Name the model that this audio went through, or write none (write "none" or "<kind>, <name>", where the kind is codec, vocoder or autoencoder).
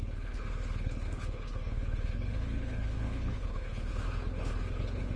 codec, HILCodec